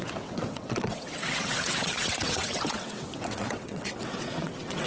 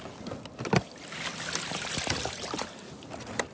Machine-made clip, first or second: first